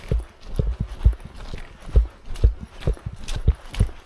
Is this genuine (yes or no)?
yes